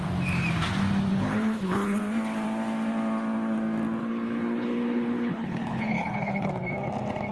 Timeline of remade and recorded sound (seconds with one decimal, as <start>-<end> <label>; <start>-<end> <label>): 0.0-1.1 recorded; 1.1-2.0 remade; 2.0-4.0 recorded; 4.0-6.5 remade; 6.5-7.3 recorded